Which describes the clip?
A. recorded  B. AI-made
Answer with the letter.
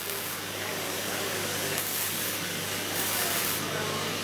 B